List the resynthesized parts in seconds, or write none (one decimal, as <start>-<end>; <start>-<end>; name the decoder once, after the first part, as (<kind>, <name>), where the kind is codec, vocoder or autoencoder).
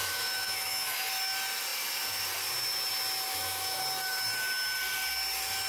0.0-1.1 (autoencoder, DAC-VAE); 3.3-3.8